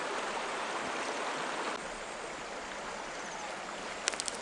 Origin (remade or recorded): recorded